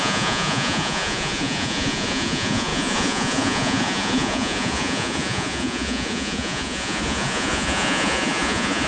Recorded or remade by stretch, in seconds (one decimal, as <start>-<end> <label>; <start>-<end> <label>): 0.0-8.9 remade